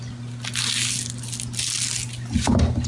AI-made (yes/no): no